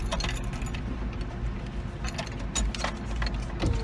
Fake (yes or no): no